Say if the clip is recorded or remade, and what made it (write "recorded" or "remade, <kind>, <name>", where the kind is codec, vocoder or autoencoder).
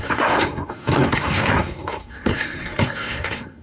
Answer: remade, codec, SNAC